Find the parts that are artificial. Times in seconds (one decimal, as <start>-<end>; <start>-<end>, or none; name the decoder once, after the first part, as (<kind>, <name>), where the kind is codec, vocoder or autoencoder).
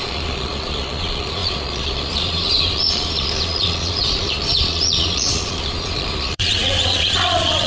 0.0-7.7 (vocoder, Vocos)